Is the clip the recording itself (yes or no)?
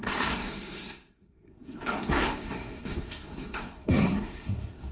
no